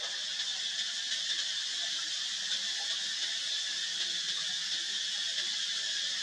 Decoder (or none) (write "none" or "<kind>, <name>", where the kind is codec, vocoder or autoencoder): none